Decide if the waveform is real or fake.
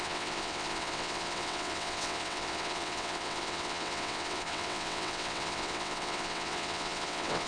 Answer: fake